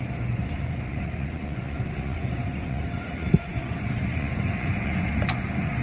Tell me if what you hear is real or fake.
fake